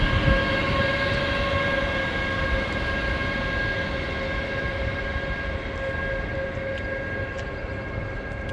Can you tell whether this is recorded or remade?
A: recorded